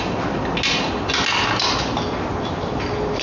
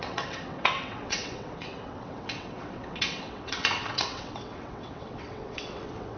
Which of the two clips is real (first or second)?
first